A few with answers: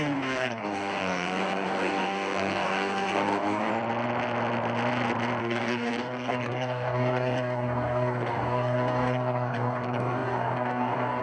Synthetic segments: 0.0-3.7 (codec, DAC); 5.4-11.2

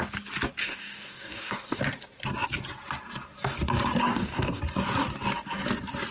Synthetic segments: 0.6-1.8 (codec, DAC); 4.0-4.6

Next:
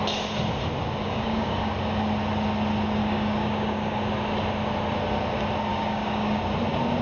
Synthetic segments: 1.0-1.7 (codec, DAC); 3.0-4.0; 5.7-6.4